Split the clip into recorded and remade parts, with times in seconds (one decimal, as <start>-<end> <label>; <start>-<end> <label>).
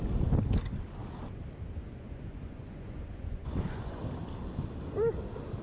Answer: 0.0-1.8 recorded; 1.8-4.0 remade; 4.0-5.6 recorded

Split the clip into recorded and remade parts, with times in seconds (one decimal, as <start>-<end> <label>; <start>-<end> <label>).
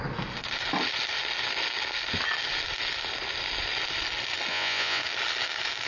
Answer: 0.0-4.5 recorded; 4.5-5.0 remade; 5.0-5.9 recorded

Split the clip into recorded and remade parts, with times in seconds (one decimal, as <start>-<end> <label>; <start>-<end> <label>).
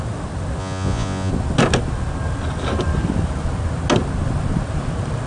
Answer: 0.0-0.6 recorded; 0.6-1.3 remade; 1.3-5.3 recorded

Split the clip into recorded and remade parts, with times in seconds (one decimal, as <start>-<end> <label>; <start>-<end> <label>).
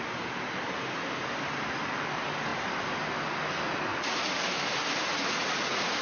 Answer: 0.0-3.9 recorded; 3.9-4.4 remade; 4.4-5.1 recorded; 5.1-6.0 remade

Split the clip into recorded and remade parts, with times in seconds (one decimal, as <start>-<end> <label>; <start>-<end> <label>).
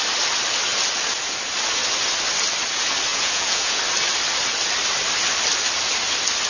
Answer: 0.0-3.1 recorded; 3.1-3.8 remade; 3.8-6.5 recorded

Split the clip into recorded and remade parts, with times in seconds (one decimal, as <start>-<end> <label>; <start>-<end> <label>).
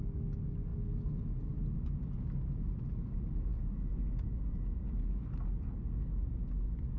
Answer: 0.0-7.0 recorded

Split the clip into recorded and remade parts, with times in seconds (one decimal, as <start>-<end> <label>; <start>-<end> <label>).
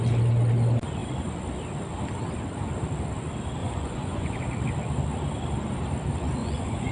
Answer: 0.0-3.6 recorded; 3.6-4.4 remade; 4.4-6.4 recorded; 6.4-6.9 remade